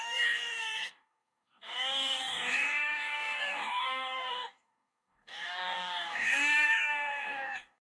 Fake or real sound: fake